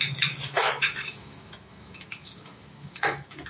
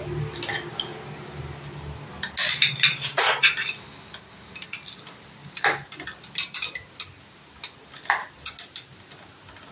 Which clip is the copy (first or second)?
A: first